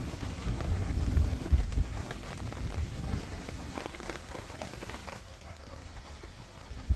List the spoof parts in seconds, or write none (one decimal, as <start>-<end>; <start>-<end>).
0.0-2.3; 2.8-7.0